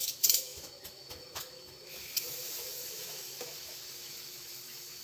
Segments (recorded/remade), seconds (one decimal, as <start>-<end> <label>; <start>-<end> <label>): 0.0-5.0 remade